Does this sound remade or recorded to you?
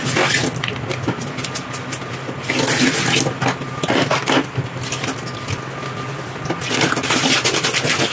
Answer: recorded